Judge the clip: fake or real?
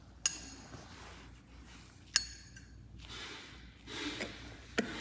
real